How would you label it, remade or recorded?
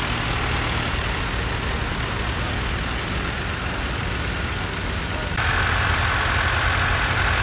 recorded